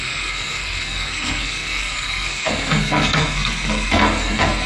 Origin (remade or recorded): remade